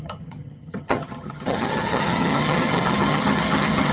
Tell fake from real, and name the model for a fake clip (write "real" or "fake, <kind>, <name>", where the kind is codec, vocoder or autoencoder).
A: fake, vocoder, HiFi-GAN